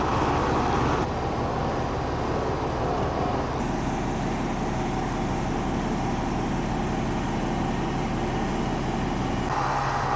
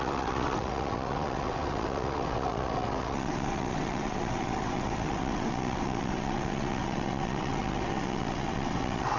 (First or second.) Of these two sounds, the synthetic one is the second